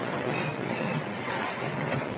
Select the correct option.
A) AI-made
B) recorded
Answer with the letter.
A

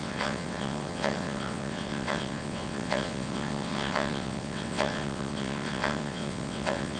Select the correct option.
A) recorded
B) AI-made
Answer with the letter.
B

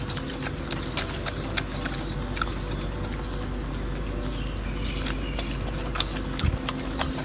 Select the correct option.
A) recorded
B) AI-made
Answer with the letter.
A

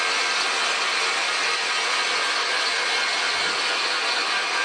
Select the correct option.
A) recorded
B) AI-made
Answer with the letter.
A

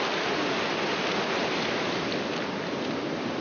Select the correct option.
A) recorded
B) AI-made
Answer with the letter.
A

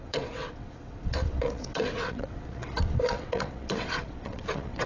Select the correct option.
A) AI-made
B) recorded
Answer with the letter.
A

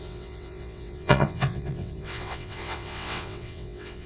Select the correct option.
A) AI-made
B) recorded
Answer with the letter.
A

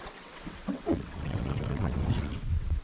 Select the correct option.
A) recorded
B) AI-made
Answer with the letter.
B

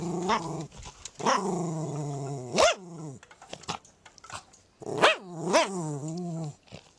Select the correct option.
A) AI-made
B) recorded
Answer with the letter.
B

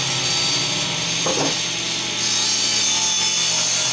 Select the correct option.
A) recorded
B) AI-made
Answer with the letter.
A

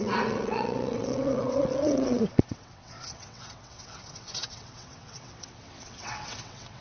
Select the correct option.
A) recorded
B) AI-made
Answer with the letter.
B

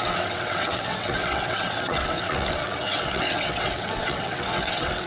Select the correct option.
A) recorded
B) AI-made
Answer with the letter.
B